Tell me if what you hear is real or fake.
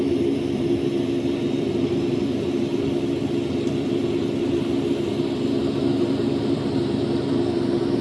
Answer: real